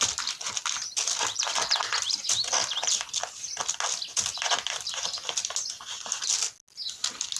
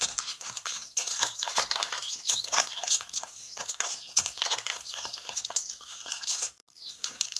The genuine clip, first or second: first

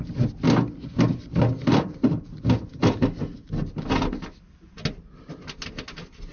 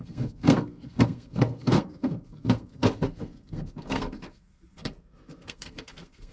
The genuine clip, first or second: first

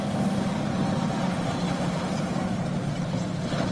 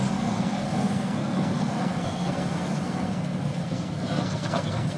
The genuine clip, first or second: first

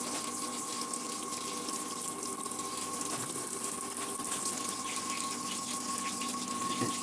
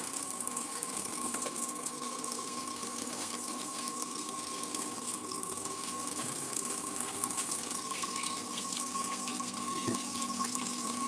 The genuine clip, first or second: first